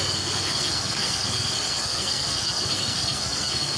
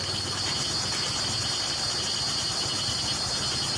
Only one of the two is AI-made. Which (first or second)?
first